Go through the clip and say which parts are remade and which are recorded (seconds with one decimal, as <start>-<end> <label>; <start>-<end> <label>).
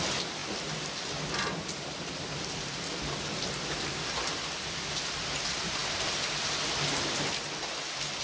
0.0-8.2 recorded